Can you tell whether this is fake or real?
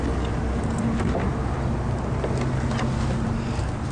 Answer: real